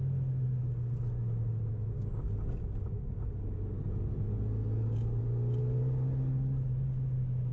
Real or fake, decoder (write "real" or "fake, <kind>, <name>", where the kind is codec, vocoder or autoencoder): real